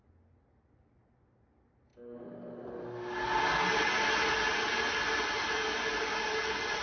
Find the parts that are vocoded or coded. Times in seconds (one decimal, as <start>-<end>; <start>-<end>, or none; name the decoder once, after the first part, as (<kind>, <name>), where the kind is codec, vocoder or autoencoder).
none